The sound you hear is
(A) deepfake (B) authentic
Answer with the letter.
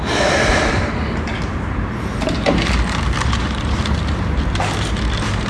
A